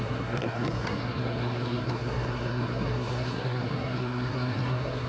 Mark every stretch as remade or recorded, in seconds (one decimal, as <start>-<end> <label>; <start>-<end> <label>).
0.0-5.1 remade